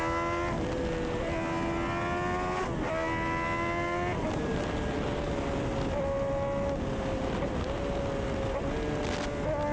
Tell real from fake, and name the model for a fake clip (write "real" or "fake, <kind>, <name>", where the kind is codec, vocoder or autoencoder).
real